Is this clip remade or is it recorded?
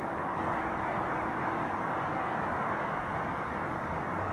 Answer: remade